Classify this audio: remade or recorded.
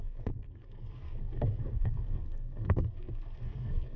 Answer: remade